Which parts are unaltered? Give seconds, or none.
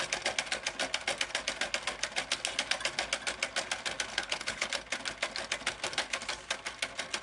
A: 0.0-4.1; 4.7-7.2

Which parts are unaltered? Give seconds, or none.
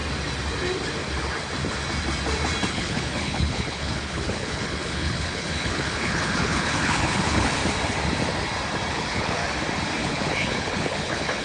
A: 0.0-2.7; 7.6-8.9; 9.4-10.0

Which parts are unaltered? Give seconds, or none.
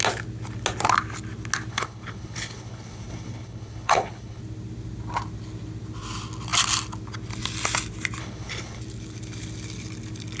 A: 0.0-1.7; 4.4-8.2; 8.8-10.4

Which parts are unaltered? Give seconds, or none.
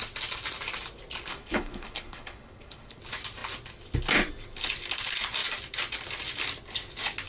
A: 0.0-1.3; 3.0-7.3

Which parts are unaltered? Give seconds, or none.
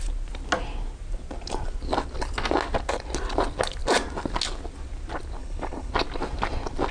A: 0.0-5.4; 5.9-6.9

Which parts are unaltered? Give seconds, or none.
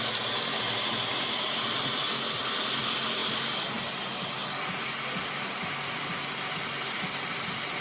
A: 0.0-7.8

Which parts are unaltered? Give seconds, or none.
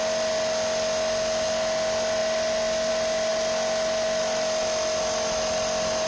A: 0.0-6.1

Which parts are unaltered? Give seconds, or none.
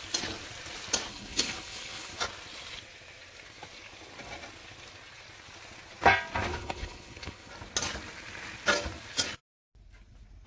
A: 0.0-1.1; 2.2-6.5; 7.5-10.5